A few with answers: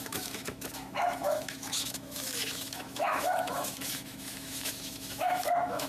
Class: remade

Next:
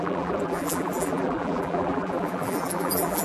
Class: remade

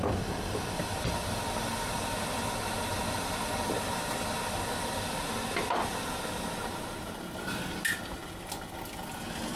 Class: recorded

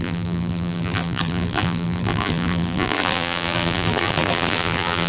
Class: remade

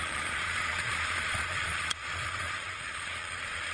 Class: remade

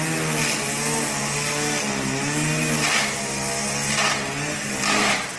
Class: recorded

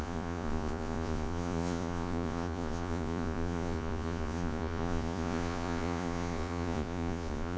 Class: remade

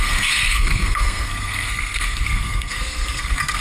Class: remade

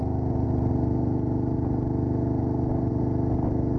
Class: recorded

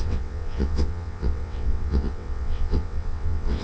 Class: remade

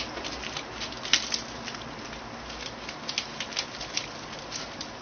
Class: recorded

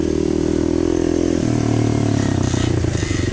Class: recorded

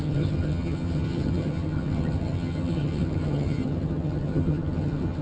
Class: remade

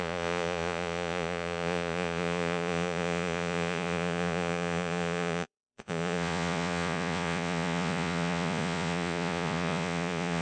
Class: remade